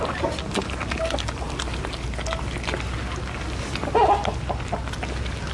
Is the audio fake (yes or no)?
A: no